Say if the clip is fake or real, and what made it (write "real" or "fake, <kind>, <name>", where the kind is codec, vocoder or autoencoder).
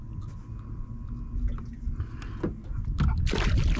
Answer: real